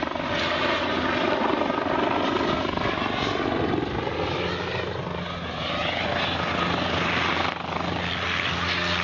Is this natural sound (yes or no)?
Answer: yes